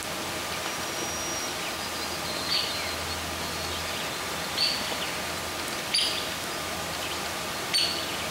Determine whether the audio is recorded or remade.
recorded